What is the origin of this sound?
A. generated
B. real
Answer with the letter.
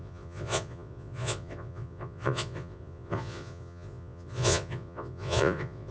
A